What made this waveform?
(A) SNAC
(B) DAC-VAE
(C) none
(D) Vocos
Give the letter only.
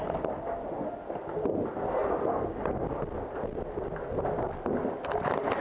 C